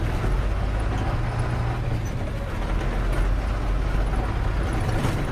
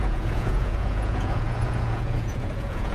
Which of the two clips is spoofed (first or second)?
second